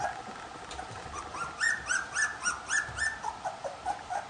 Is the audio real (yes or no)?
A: yes